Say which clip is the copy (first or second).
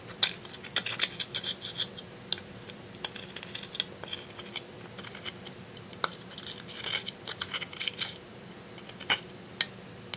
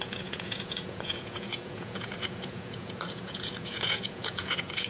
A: second